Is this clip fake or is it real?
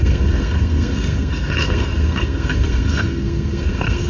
fake